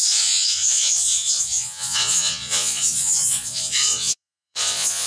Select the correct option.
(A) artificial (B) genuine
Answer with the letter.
A